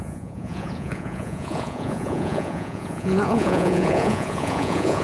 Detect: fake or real fake